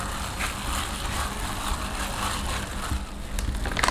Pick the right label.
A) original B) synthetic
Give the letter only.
A